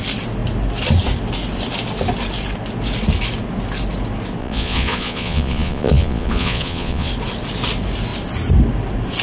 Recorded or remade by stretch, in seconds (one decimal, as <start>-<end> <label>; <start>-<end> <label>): 0.0-4.4 recorded; 4.4-7.1 remade; 7.1-9.2 recorded